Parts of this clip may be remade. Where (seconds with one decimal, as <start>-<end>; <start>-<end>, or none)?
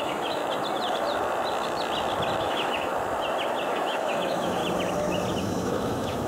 0.0-0.4; 2.4-2.9; 3.7-4.6; 5.4-6.3